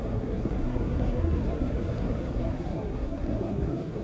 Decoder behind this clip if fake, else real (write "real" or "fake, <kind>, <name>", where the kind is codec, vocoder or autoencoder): fake, codec, SNAC